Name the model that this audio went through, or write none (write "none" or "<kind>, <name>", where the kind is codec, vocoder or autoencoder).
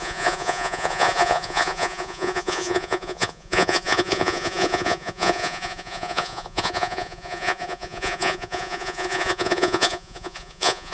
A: vocoder, Vocos